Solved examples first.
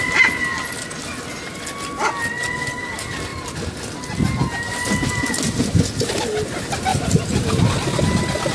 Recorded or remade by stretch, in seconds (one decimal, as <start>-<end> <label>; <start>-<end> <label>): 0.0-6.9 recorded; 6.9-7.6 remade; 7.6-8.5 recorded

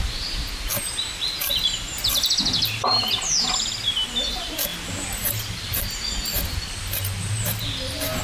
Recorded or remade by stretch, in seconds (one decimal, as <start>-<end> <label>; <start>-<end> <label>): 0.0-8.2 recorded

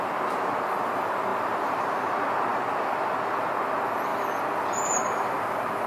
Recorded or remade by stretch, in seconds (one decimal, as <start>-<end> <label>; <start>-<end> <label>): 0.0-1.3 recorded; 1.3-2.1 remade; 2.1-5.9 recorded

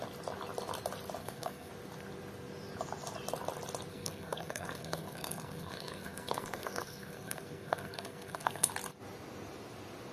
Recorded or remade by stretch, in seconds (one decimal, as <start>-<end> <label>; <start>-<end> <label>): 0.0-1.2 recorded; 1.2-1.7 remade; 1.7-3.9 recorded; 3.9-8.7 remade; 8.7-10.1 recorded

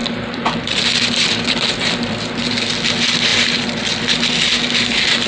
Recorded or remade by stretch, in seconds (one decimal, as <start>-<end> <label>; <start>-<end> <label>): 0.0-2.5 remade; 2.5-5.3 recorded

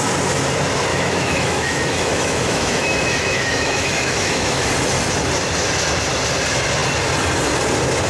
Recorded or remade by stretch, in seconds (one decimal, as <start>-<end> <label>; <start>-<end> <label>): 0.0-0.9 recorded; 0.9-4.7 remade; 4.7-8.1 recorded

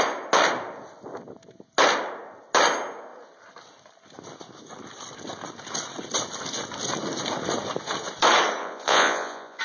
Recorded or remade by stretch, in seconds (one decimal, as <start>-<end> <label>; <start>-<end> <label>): 0.0-8.6 recorded; 8.6-9.6 remade